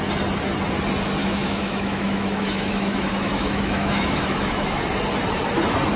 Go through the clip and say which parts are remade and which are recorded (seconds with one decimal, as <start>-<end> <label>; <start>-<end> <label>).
0.0-1.2 recorded; 1.2-4.8 remade; 4.8-6.0 recorded